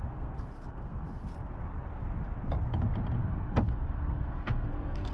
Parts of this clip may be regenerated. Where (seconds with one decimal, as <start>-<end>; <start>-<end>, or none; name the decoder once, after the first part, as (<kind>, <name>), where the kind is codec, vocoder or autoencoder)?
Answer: 0.0-1.3 (codec, SNAC); 3.2-5.1